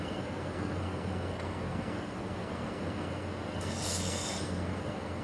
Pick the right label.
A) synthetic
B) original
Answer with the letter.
A